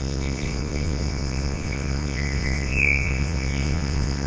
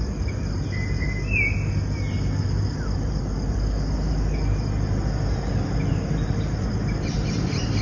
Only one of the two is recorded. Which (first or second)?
second